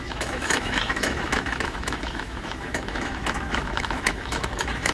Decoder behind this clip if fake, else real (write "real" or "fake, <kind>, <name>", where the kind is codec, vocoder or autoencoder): fake, autoencoder, DAC-VAE